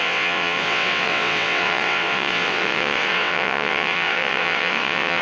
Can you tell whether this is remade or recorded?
remade